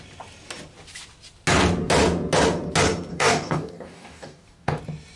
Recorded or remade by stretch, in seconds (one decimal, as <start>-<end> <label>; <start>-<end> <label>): 0.0-3.1 recorded; 3.1-4.8 remade; 4.8-5.2 recorded